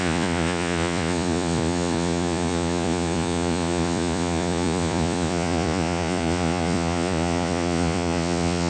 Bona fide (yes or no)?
no